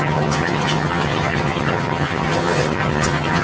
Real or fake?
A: fake